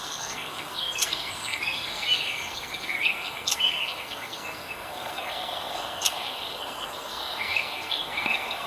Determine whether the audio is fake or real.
fake